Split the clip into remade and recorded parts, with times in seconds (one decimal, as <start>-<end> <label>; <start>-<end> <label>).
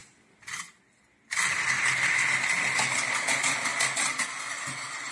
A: 0.0-5.1 recorded